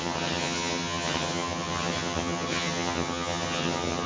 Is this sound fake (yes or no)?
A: yes